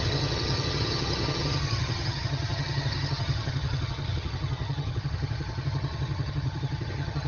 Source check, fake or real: fake